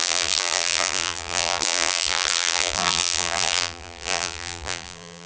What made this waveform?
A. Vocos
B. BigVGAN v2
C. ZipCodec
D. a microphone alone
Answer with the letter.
B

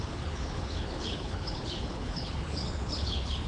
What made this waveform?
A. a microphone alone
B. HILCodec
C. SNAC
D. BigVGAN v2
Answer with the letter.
B